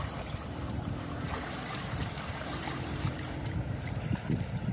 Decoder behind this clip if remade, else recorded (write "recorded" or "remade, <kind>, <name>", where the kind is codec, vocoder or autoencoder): remade, vocoder, BigVGAN v2